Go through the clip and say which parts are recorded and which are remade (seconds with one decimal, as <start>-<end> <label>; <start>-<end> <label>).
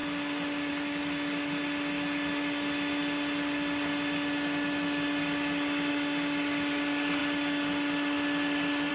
0.0-8.9 recorded